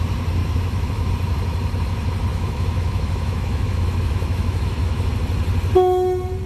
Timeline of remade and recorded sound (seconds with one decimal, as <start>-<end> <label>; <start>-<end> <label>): 0.0-0.4 recorded; 0.4-1.1 remade; 1.1-2.3 recorded; 2.3-5.1 remade; 5.1-6.5 recorded